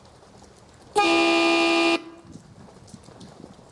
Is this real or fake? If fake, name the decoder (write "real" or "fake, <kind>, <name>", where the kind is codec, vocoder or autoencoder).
real